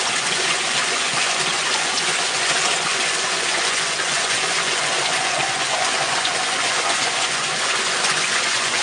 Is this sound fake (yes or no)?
yes